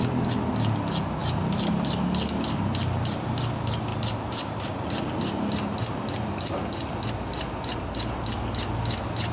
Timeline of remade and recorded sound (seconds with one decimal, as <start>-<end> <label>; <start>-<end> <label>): 0.0-3.9 recorded; 3.9-4.6 remade; 4.6-9.3 recorded

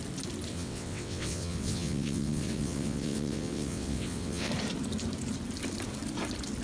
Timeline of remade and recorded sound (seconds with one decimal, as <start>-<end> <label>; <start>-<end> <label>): 0.0-0.5 recorded; 0.5-4.5 remade; 4.5-6.6 recorded

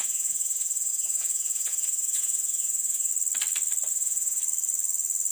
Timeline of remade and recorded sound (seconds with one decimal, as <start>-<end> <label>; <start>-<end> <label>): 0.0-3.1 remade; 3.1-3.9 recorded; 3.9-4.4 remade; 4.4-5.3 recorded

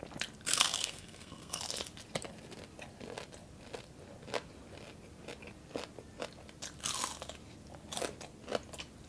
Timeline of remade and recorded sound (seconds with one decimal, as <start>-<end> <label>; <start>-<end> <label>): 0.0-0.5 recorded; 0.5-1.6 remade; 1.6-9.1 recorded

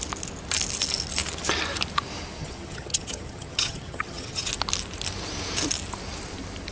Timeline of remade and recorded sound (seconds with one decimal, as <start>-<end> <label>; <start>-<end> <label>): 0.0-2.4 recorded; 2.4-4.5 remade; 4.5-6.7 recorded

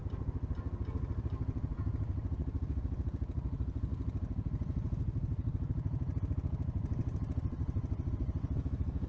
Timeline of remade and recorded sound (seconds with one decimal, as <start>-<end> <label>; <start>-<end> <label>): 0.0-9.1 recorded

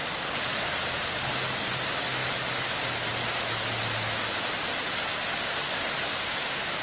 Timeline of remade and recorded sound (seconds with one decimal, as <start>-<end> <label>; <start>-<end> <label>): 0.0-6.8 recorded

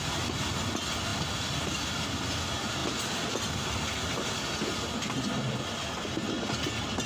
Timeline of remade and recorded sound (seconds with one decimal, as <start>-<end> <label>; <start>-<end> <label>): 0.0-2.8 recorded; 2.8-3.4 remade; 3.4-7.1 recorded